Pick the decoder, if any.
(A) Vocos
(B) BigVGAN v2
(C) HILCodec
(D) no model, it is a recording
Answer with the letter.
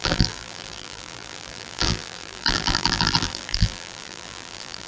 B